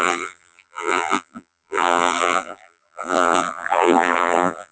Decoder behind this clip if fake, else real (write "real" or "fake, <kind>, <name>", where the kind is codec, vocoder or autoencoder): fake, vocoder, BigVGAN v2